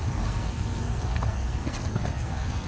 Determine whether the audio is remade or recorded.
remade